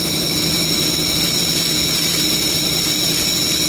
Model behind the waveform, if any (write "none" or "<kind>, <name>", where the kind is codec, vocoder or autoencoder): none